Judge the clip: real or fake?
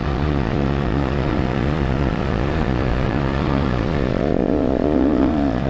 fake